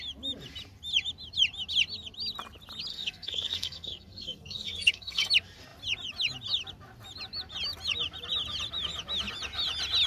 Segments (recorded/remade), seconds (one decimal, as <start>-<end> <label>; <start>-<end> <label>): 0.0-2.9 recorded; 2.9-5.3 remade; 5.3-10.1 recorded